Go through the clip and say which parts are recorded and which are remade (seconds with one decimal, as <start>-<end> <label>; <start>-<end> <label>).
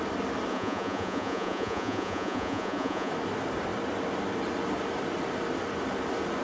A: 0.0-0.5 recorded; 0.5-3.1 remade; 3.1-6.4 recorded